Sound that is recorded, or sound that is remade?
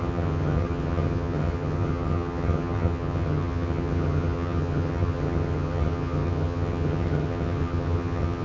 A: remade